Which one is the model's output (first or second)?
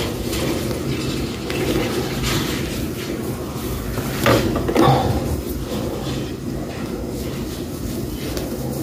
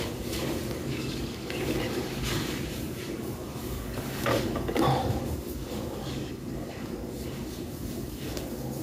second